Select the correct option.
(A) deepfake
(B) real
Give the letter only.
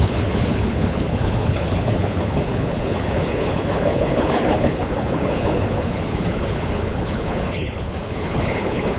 A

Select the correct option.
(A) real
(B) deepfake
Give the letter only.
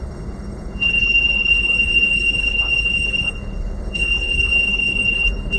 B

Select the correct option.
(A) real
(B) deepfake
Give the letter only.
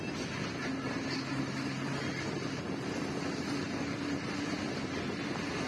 A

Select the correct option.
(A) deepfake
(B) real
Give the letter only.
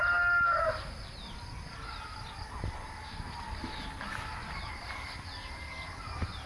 B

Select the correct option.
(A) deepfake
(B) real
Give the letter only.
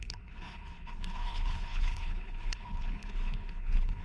A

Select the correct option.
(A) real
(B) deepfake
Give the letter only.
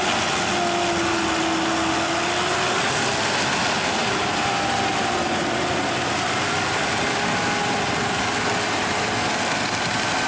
A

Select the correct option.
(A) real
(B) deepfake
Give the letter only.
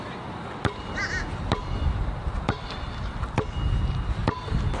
A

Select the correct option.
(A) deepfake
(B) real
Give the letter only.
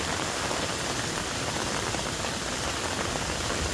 B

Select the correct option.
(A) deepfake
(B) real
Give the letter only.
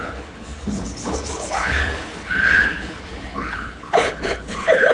A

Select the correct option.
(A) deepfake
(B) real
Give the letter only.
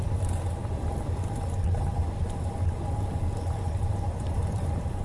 B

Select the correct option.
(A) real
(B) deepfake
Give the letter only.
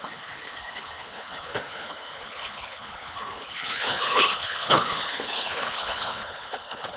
B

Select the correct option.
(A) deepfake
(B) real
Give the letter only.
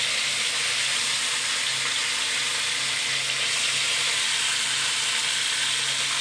B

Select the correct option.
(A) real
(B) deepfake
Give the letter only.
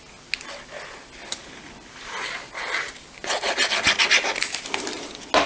A